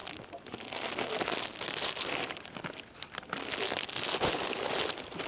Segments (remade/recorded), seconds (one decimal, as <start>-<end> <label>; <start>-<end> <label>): 0.0-5.3 recorded